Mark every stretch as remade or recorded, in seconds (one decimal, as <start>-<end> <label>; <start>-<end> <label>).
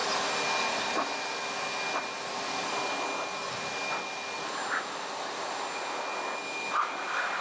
0.0-7.4 recorded